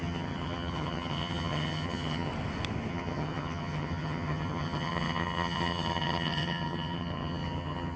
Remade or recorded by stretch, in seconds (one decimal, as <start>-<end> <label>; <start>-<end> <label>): 0.0-2.3 remade; 2.3-2.9 recorded; 2.9-8.0 remade